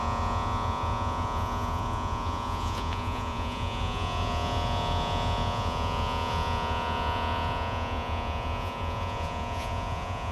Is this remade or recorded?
remade